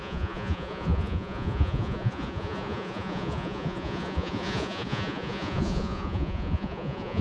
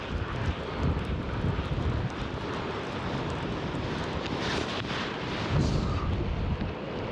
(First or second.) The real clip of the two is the second